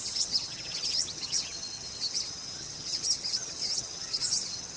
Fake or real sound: fake